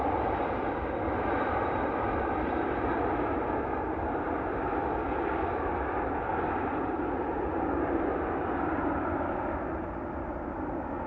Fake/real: real